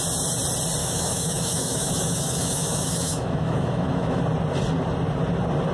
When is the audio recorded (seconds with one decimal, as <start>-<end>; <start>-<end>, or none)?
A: 0.0-0.8; 4.2-5.7